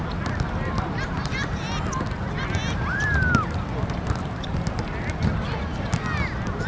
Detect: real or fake real